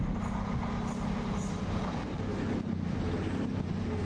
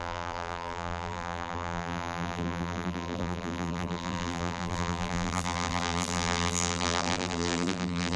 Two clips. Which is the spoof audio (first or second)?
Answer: second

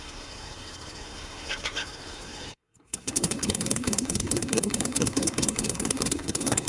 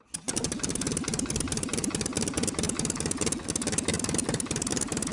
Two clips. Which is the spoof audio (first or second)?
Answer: first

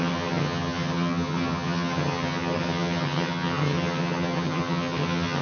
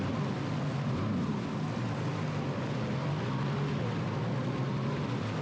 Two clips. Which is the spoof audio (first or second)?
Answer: first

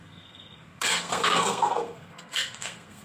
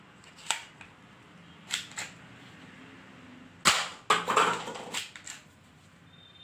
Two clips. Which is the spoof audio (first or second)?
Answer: first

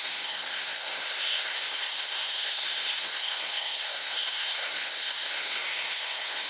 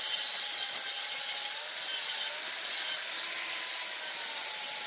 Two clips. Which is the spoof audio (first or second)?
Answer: first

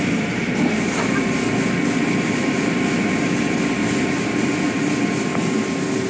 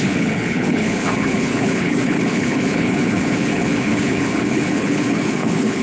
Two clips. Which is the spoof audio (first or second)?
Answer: second